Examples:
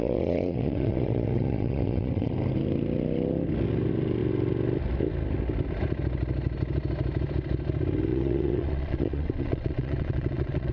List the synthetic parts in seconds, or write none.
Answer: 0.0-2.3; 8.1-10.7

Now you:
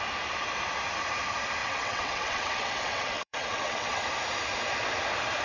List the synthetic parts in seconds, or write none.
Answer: 1.6-4.0

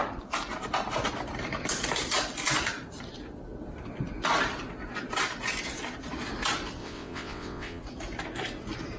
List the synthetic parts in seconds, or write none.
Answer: 6.8-7.8

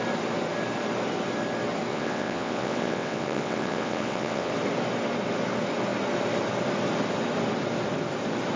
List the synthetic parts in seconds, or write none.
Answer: 1.9-4.5

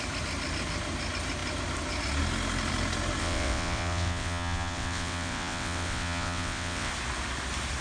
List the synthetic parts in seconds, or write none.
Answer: 3.2-6.9

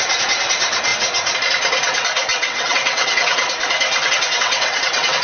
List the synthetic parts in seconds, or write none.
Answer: 2.3-3.5; 3.9-5.2

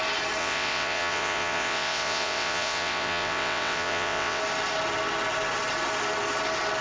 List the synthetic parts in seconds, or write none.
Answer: 0.4-4.4